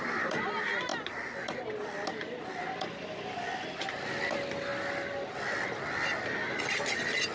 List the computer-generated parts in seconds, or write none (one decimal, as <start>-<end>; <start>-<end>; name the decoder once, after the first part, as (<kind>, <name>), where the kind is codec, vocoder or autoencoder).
none